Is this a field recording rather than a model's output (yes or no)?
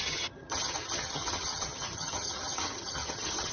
no